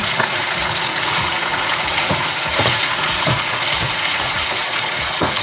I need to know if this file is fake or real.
fake